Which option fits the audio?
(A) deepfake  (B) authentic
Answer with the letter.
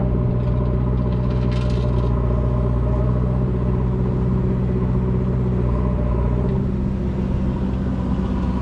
B